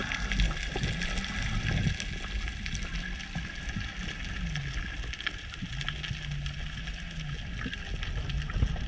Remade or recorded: recorded